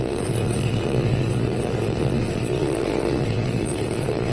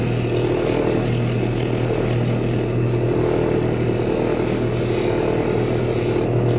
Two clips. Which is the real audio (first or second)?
second